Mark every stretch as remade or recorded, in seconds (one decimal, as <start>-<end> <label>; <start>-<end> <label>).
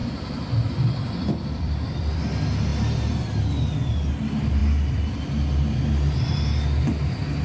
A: 0.0-2.2 remade; 2.2-7.4 recorded